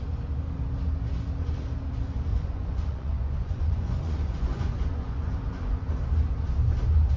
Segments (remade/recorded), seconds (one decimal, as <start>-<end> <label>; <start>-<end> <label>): 0.0-2.3 recorded; 2.3-5.9 remade; 5.9-7.2 recorded

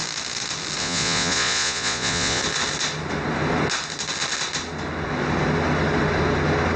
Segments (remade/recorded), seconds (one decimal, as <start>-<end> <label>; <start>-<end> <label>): 0.0-0.8 recorded; 0.8-2.4 remade; 2.4-6.8 recorded